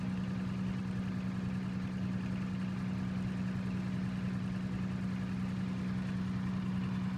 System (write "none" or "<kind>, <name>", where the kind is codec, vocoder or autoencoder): none